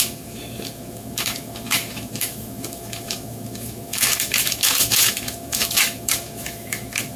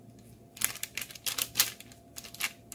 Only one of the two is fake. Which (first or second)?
first